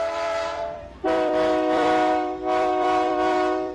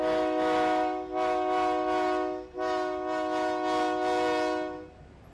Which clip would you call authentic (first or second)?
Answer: second